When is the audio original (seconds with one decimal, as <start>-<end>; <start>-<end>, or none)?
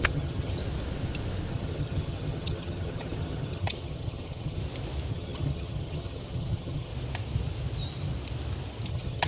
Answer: 0.6-1.5; 4.6-5.1; 6.9-8.9